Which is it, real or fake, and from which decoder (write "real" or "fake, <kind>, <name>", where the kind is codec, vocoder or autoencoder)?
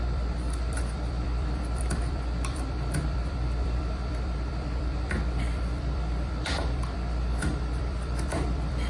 fake, vocoder, BigVGAN v2